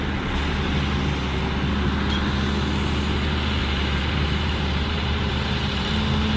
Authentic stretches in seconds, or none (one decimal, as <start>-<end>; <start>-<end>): 0.0-3.6; 5.9-6.4